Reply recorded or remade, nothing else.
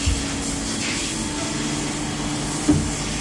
recorded